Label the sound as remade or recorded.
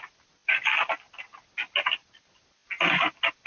recorded